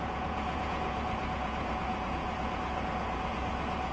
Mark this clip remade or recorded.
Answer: remade